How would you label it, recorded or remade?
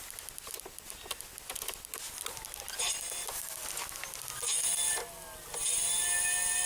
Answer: recorded